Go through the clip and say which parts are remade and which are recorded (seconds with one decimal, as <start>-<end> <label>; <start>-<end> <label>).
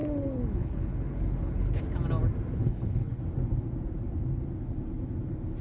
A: 0.0-1.8 remade; 1.8-2.6 recorded; 2.6-3.2 remade; 3.2-5.6 recorded